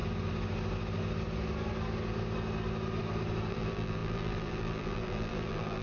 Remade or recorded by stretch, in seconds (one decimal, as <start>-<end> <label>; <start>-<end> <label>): 0.0-3.5 recorded; 3.5-5.8 remade